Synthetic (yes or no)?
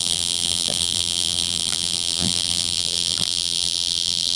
yes